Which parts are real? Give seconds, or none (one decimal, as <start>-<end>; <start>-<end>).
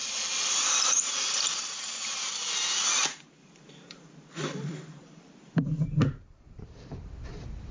1.8-2.3; 6.9-7.7